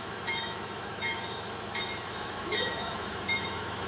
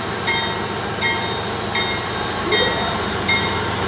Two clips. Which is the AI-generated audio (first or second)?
first